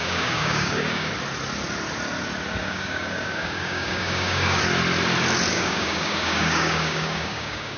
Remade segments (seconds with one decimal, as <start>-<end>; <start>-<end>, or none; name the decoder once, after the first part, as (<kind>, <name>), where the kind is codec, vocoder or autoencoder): 0.0-1.1 (codec, DAC); 2.6-4.6; 5.5-7.8